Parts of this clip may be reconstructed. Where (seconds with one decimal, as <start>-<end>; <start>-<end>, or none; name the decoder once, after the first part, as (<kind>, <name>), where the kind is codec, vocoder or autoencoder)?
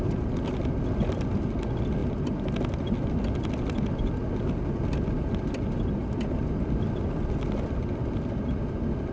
none